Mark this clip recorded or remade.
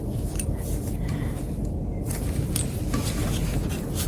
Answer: recorded